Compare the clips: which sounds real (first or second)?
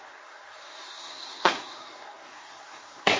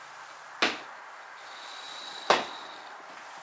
second